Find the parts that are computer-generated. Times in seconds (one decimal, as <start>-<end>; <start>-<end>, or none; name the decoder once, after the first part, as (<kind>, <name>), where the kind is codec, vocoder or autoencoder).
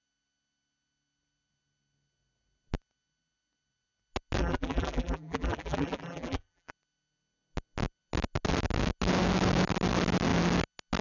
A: 4.4-6.7 (vocoder, BigVGAN v2)